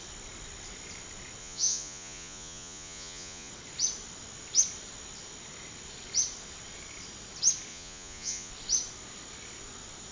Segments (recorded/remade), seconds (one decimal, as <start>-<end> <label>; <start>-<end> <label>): 0.0-1.4 recorded; 1.4-3.5 remade; 3.5-7.7 recorded; 7.7-8.5 remade; 8.5-10.1 recorded